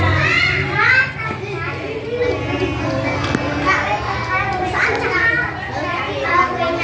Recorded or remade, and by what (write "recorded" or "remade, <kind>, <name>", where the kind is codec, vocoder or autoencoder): recorded